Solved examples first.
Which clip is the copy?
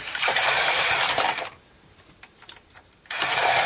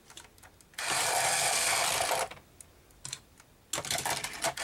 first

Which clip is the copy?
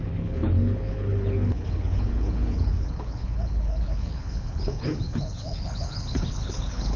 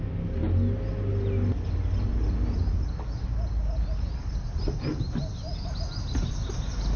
first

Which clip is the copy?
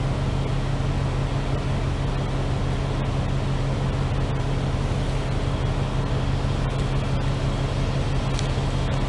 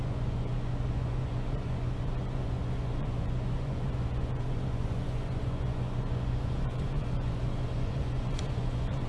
second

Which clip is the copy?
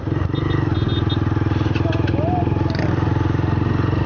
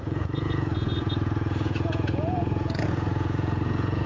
second